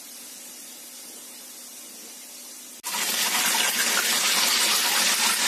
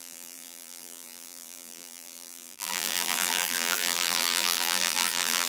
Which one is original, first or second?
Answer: first